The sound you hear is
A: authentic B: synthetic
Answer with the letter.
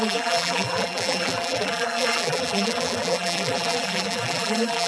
B